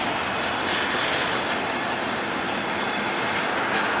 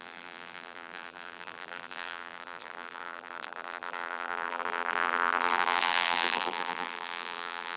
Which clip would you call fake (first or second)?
second